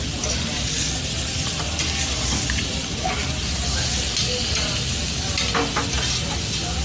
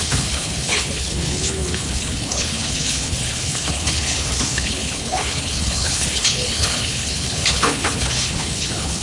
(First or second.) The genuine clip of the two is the first